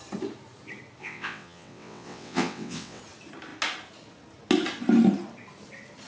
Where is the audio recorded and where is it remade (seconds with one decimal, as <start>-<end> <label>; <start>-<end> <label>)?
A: 0.0-1.0 recorded; 1.0-3.0 remade; 3.0-6.1 recorded